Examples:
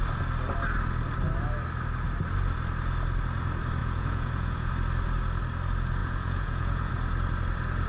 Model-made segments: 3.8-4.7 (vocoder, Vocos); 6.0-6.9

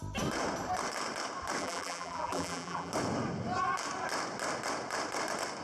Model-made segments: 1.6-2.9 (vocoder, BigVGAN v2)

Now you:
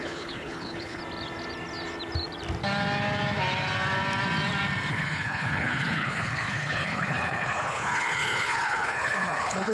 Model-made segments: 0.0-1.0 (codec, HILCodec); 4.9-9.7

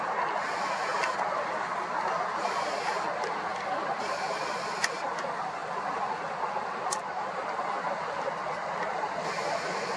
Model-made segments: none

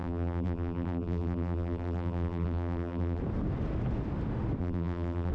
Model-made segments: 0.0-3.2 (vocoder, BigVGAN v2); 4.6-5.3